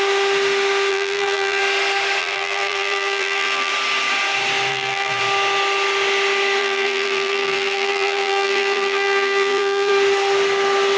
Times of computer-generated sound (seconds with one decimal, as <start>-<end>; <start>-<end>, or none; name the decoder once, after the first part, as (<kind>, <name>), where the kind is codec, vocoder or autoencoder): 0.9-1.6 (vocoder, BigVGAN v2); 2.2-3.7; 4.7-5.2; 6.6-9.9